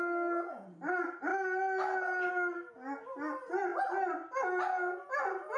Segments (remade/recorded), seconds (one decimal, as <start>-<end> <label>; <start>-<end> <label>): 0.0-5.6 recorded